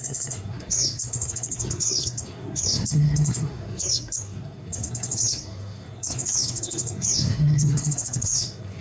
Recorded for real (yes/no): no